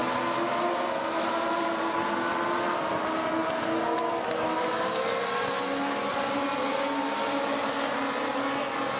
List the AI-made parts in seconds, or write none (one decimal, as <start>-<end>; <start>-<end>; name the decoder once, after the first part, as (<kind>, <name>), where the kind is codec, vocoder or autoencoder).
none